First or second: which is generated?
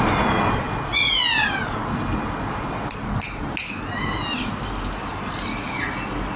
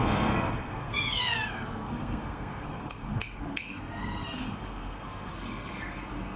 second